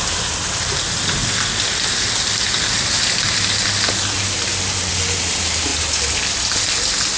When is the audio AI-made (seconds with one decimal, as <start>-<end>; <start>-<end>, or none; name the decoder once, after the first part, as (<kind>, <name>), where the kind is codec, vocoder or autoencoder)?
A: 1.2-4.9 (vocoder, BigVGAN v2); 5.7-7.2

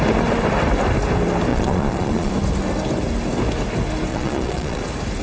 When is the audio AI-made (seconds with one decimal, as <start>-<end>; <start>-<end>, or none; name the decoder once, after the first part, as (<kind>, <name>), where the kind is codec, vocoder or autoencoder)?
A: 1.5-2.3 (vocoder, Vocos); 4.1-4.8

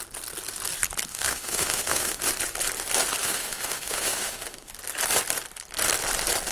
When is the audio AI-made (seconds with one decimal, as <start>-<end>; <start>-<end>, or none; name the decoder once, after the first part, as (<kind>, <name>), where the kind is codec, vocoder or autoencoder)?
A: 1.1-2.3 (autoencoder, DAC-VAE); 3.2-4.7

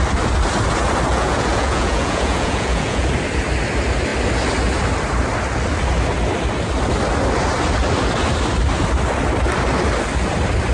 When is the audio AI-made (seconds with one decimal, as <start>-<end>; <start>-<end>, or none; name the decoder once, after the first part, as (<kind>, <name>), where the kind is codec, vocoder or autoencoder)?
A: 1.1-3.1 (vocoder, Vocos)

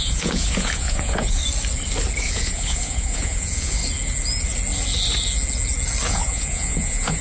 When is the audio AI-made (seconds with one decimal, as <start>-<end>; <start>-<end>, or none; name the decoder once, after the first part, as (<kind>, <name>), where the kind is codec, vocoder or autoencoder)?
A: 0.0-1.4 (vocoder, Vocos); 2.2-3.8; 6.1-7.2